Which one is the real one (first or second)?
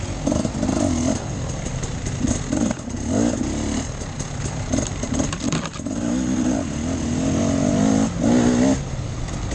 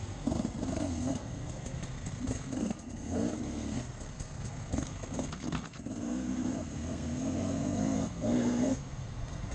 first